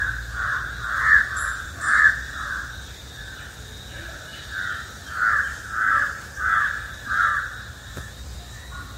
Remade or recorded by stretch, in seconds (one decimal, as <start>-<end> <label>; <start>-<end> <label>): 0.0-0.5 recorded; 0.5-3.2 remade; 3.2-9.0 recorded